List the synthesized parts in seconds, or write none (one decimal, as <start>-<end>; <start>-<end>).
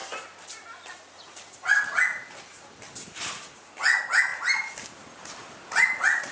none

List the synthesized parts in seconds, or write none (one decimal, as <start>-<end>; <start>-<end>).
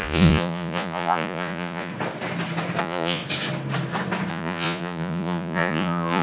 0.0-1.9; 2.8-3.2; 4.3-6.2